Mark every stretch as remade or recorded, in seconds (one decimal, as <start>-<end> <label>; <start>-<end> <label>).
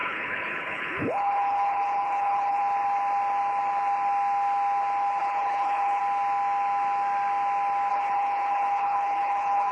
0.0-2.6 remade; 2.6-5.2 recorded; 5.2-6.0 remade; 6.0-7.9 recorded; 7.9-9.7 remade